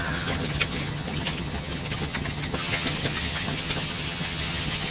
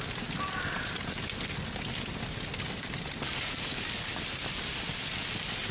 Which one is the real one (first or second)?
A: second